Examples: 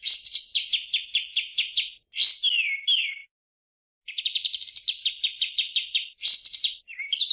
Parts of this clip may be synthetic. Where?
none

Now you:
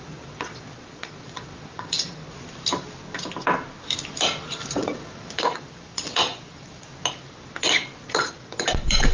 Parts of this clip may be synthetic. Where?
0.0-2.2; 4.7-6.9; 8.0-9.1

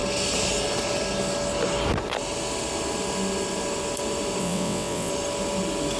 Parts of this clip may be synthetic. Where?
4.4-5.1

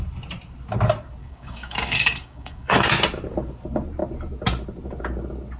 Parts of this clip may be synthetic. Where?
1.2-2.9

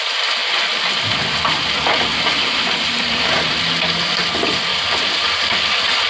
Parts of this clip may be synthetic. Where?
0.4-3.6; 4.7-6.1

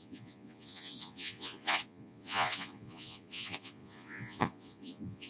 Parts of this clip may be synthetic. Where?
0.0-5.3